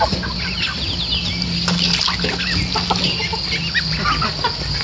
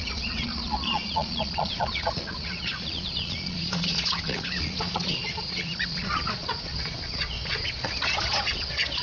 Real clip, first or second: first